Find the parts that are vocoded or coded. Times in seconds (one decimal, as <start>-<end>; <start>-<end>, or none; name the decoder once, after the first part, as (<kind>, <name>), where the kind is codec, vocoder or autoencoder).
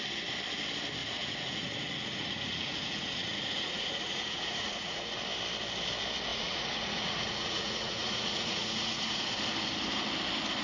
1.0-5.2 (vocoder, Vocos); 6.3-9.4